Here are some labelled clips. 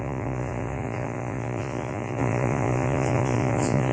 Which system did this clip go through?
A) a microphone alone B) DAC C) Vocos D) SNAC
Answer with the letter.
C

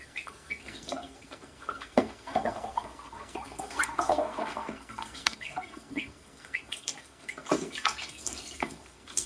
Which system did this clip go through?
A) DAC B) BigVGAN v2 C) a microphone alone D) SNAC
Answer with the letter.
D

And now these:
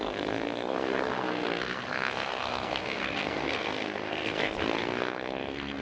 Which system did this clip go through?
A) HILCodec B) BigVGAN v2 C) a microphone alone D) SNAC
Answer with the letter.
D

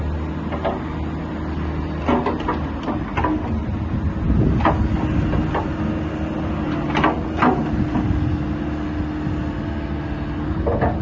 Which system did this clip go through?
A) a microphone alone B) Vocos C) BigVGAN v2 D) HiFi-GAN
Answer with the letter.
A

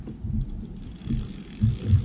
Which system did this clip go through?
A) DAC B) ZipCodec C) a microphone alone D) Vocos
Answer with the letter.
C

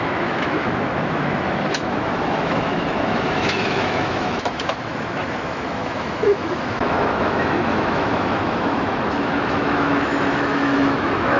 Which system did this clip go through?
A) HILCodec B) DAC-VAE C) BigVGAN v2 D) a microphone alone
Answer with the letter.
B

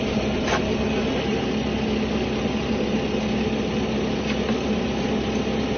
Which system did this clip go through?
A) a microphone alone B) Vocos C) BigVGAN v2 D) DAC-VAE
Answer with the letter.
A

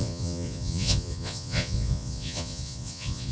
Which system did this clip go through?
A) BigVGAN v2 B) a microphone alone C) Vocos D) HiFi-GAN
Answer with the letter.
C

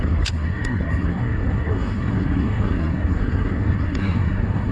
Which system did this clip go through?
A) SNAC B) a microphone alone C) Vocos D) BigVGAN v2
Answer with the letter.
A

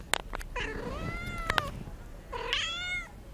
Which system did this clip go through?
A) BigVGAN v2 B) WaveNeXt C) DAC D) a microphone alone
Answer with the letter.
D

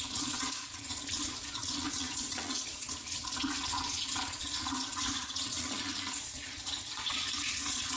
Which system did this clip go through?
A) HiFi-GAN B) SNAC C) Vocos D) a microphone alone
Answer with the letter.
C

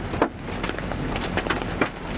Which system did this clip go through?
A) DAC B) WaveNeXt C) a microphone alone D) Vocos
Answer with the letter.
C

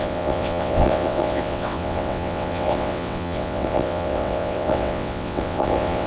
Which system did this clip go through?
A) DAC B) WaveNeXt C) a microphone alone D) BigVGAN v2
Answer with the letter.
B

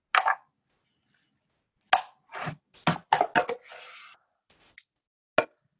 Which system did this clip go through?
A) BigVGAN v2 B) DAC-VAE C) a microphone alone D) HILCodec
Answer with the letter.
C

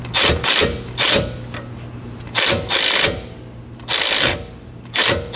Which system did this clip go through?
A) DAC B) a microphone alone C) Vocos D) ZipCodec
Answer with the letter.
B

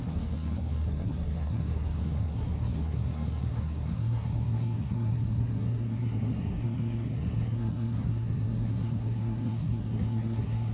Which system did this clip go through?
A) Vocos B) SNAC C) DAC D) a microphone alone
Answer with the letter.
B